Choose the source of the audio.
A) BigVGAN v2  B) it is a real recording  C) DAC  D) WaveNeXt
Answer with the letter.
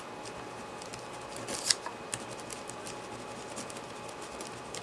B